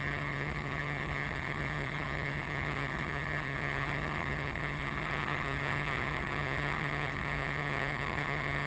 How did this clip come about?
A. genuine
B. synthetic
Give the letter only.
B